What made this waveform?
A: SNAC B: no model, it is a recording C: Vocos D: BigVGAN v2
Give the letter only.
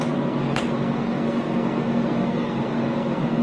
A